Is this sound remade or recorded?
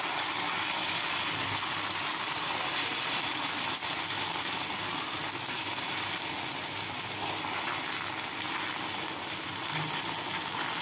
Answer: recorded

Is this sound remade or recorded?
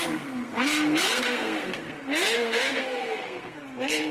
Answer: remade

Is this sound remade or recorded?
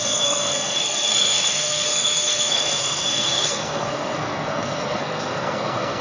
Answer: remade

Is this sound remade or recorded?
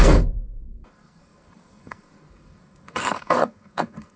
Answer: remade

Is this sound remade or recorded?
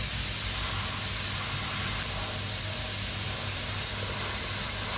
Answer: recorded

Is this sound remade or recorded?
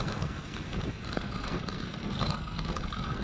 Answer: remade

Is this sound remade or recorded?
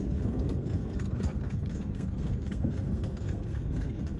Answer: remade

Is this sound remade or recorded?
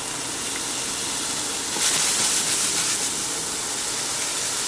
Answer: recorded